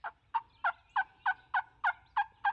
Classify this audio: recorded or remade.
recorded